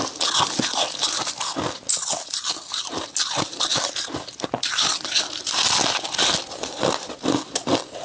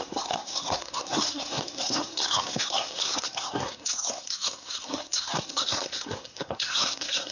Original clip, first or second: first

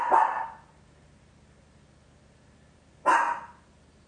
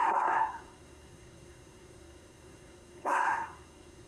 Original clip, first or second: first